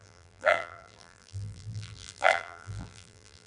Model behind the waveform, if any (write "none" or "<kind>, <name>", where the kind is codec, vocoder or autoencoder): vocoder, BigVGAN v2